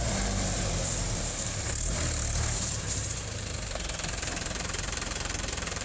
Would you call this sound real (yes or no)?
no